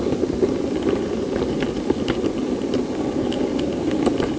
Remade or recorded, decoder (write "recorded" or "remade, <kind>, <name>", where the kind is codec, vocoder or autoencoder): recorded